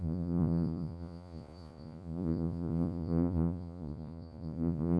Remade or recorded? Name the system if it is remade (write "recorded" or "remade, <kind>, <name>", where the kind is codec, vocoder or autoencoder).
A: remade, vocoder, Vocos